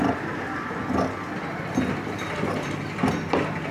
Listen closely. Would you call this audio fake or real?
real